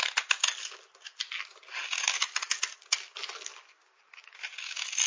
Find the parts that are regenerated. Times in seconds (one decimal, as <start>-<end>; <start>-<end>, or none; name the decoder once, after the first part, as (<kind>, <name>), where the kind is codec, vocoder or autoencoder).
none